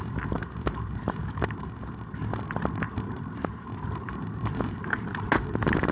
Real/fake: fake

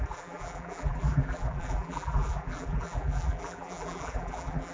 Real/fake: fake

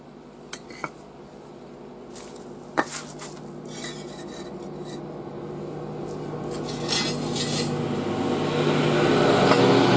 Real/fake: real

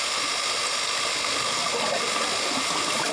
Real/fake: real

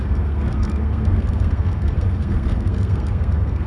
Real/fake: fake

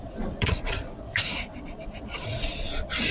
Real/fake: fake